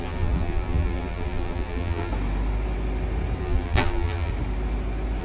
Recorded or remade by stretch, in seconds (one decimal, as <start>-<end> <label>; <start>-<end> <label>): 0.0-2.1 remade; 2.1-3.4 recorded; 3.4-4.3 remade; 4.3-5.2 recorded

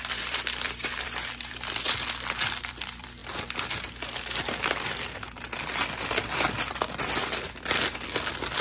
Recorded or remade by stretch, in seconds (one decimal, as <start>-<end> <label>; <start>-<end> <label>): 0.0-3.2 remade; 3.2-8.6 recorded

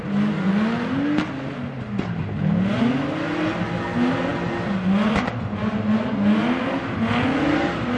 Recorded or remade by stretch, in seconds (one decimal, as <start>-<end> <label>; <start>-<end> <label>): 0.0-8.0 recorded

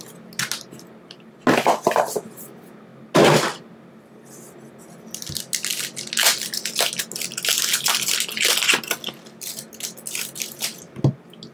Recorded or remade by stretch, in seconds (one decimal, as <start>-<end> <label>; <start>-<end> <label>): 0.0-11.5 recorded

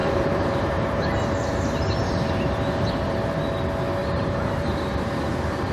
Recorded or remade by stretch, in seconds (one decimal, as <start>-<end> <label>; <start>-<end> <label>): 0.0-3.4 remade; 3.4-4.0 recorded; 4.0-5.3 remade; 5.3-5.7 recorded

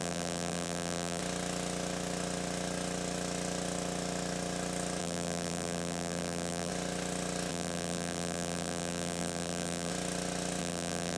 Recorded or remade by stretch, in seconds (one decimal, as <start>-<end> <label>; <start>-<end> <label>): 0.0-1.2 remade; 1.2-5.0 recorded; 5.0-6.7 remade; 6.7-7.5 recorded; 7.5-9.9 remade; 9.9-10.6 recorded; 10.6-11.2 remade

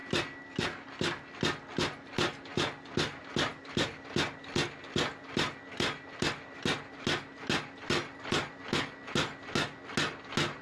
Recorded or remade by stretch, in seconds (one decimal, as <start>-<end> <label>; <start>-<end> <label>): 0.0-3.5 recorded; 3.5-4.1 remade; 4.1-10.6 recorded